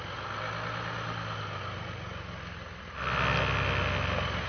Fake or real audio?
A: real